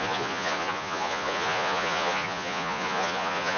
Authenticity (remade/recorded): remade